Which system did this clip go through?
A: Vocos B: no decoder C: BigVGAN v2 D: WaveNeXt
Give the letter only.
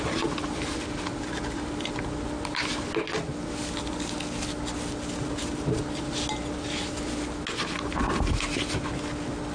B